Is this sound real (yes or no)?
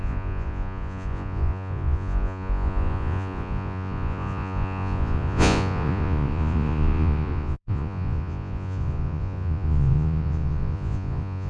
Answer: no